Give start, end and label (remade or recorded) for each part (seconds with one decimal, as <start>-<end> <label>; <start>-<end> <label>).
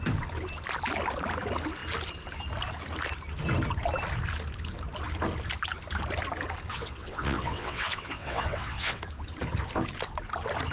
0.0-6.7 recorded; 6.7-9.0 remade; 9.0-10.7 recorded